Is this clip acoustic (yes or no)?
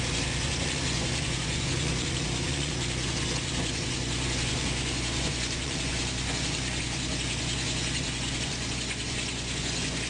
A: no